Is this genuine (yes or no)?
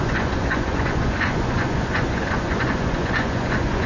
no